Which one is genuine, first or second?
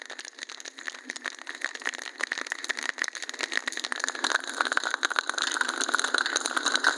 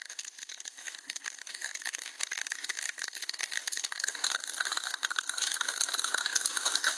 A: first